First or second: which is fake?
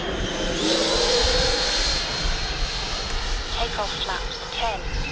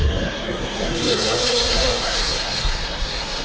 second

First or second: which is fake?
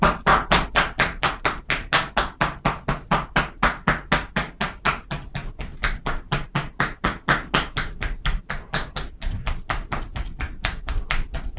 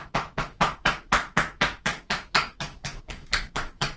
second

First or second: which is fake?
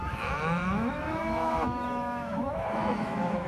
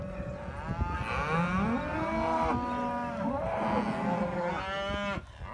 first